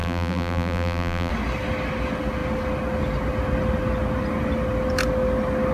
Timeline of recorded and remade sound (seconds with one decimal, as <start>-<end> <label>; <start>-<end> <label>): 0.0-1.3 remade; 1.3-5.7 recorded